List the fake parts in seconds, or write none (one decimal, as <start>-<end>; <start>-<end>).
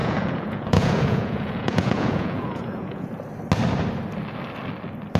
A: 0.0-3.1